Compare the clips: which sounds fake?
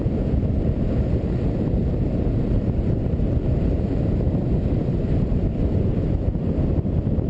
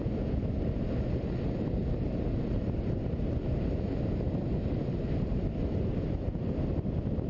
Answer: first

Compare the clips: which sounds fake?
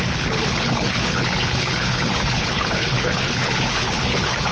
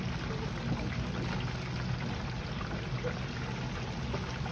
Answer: first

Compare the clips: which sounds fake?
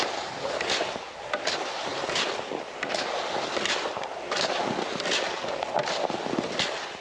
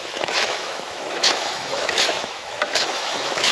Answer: second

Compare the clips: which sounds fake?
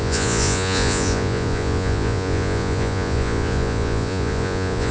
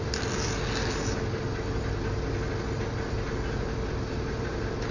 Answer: first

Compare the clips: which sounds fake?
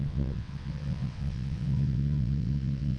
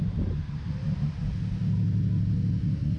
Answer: first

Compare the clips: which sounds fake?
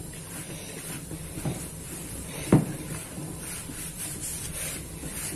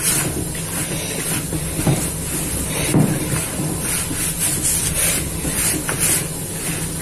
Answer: first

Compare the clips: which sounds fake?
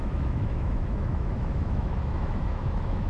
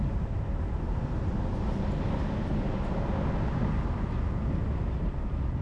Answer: first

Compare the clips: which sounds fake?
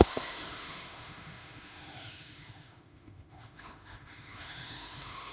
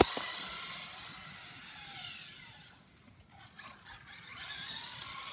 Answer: first